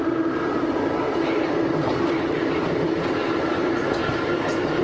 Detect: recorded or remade remade